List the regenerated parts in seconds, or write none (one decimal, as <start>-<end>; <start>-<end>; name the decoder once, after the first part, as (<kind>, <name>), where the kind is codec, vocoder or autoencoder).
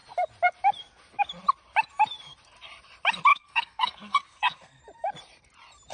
3.3-4.8 (codec, SNAC)